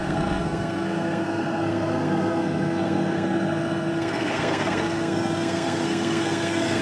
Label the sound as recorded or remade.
remade